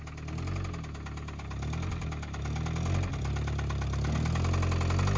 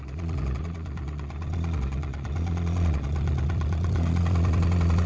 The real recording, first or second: first